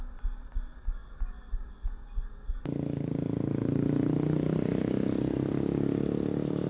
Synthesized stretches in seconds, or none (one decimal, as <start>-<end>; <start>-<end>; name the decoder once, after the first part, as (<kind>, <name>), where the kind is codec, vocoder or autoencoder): none